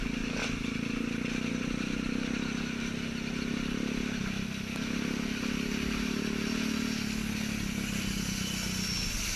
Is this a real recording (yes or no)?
yes